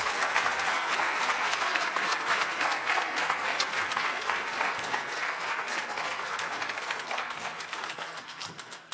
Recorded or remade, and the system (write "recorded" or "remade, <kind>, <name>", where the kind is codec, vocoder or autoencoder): remade, codec, SNAC